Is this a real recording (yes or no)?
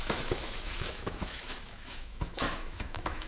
no